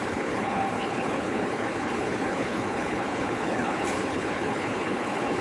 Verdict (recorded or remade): remade